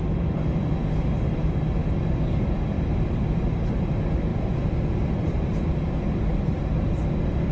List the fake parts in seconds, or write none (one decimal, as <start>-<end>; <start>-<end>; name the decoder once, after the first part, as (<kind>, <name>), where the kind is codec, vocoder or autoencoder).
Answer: none